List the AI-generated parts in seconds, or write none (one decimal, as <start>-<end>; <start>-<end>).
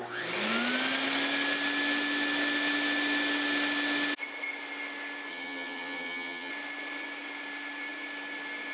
5.3-6.5